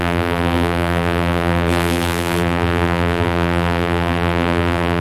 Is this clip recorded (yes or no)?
no